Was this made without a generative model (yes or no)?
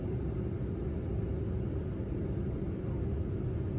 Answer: yes